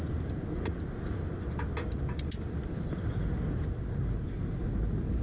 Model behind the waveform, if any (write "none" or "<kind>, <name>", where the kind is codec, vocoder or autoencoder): none